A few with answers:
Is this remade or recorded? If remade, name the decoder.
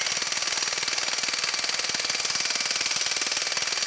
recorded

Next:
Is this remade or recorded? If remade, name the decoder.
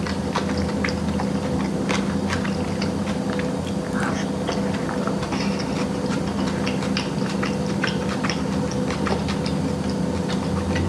recorded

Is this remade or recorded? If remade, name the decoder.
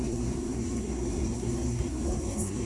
remade, codec, SNAC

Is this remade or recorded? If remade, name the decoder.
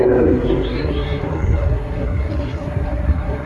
remade, codec, SNAC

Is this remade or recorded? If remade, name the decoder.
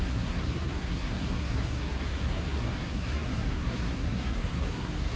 remade, codec, SNAC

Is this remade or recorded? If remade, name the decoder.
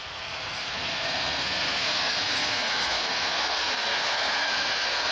remade, codec, SNAC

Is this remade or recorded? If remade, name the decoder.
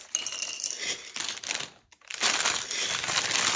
recorded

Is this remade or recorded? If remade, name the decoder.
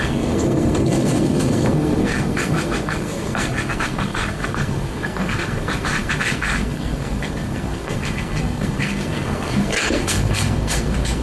remade, codec, SNAC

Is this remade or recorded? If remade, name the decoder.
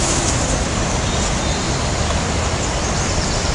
recorded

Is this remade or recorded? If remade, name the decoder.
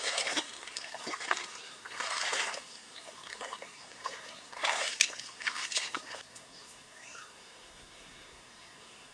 remade, codec, SNAC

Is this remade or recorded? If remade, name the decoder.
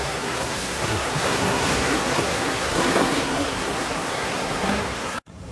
remade, codec, SNAC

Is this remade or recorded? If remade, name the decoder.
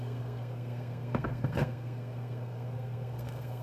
remade, codec, SNAC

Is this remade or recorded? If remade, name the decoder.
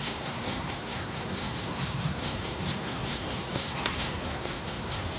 remade, codec, SNAC